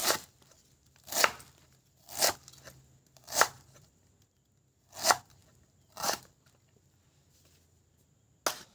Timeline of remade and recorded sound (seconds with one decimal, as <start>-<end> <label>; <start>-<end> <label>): 0.0-1.0 remade; 1.0-3.2 recorded; 3.2-4.0 remade; 4.0-5.4 recorded; 5.4-6.3 remade; 6.3-8.7 recorded